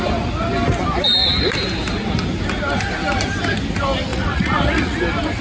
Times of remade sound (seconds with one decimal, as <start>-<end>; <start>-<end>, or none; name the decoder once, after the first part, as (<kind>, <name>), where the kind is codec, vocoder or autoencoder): 4.1-5.0 (vocoder, Vocos)